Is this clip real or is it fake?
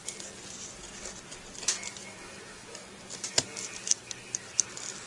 real